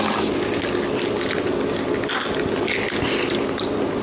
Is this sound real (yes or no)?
yes